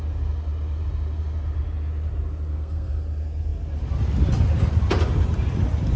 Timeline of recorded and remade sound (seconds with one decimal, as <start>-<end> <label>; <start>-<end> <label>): 0.0-2.5 recorded; 2.5-3.0 remade; 3.0-6.0 recorded